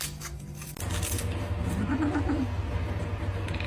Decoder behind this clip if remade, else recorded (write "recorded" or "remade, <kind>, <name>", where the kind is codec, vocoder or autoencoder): recorded